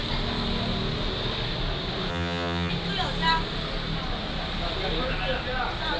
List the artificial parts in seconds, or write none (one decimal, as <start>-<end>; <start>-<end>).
2.1-2.7